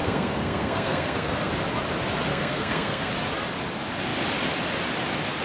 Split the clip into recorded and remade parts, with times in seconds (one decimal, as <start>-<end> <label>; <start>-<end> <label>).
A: 0.0-1.5 remade; 1.5-2.3 recorded; 2.3-3.1 remade; 3.1-5.4 recorded

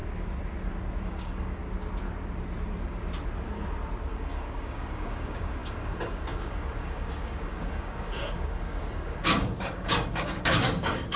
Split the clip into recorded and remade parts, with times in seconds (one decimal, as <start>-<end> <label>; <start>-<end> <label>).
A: 0.0-1.0 recorded; 1.0-1.6 remade; 1.6-4.1 recorded; 4.1-11.2 remade

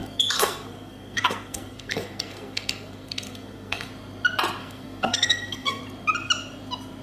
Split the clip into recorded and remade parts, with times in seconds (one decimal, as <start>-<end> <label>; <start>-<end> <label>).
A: 0.0-3.9 remade; 3.9-4.6 recorded; 4.6-5.8 remade; 5.8-7.0 recorded